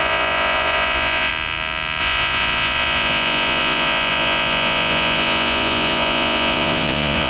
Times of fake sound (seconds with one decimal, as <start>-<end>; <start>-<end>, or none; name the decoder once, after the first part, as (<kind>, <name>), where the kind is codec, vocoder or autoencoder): 0.0-1.3 (vocoder, Vocos); 2.0-7.3